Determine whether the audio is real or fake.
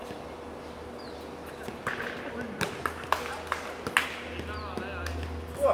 real